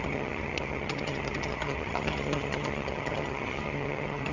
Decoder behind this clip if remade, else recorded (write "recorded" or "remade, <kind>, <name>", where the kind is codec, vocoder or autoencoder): remade, vocoder, HiFi-GAN